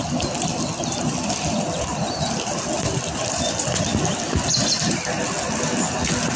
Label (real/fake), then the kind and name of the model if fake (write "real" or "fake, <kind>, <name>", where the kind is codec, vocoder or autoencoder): real